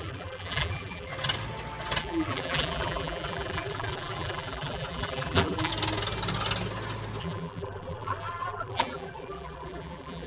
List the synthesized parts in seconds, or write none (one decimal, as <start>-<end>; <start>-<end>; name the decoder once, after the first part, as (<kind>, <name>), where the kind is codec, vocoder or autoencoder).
0.0-1.1 (vocoder, BigVGAN v2); 2.0-5.7; 7.2-10.3